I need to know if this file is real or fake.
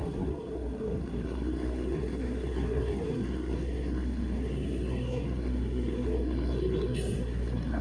fake